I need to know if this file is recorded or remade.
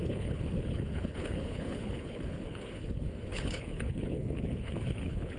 remade